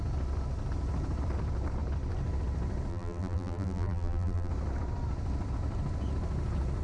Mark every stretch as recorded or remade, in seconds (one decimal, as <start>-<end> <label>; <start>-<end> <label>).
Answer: 0.0-2.9 recorded; 2.9-4.5 remade; 4.5-6.8 recorded